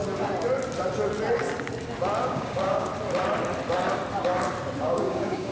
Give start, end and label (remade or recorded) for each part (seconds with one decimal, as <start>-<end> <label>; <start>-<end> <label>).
0.0-2.2 recorded; 2.2-2.9 remade; 2.9-4.8 recorded; 4.8-5.5 remade